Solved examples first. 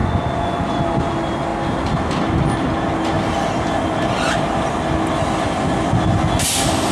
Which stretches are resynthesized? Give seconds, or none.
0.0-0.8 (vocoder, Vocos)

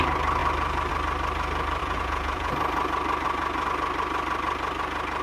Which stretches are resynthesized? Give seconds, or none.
1.8-2.5 (vocoder, Vocos)